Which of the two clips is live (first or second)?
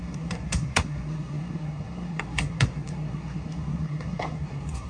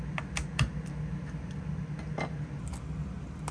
second